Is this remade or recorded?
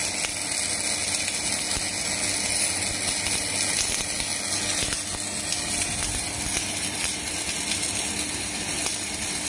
recorded